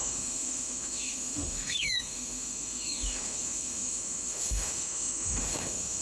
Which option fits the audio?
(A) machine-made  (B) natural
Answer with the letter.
A